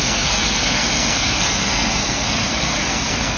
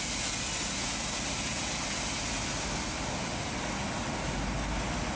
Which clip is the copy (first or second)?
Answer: first